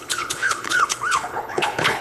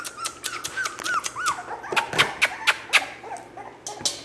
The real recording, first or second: second